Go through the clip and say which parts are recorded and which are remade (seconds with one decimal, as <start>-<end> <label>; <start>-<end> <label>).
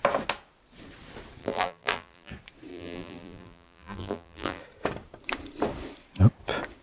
0.0-1.4 recorded; 1.4-2.3 remade; 2.3-2.7 recorded; 2.7-4.6 remade; 4.6-6.8 recorded